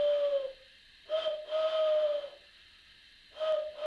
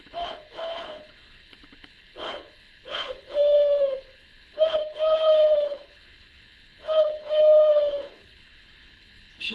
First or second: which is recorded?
first